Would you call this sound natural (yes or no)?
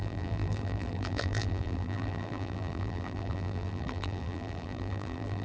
no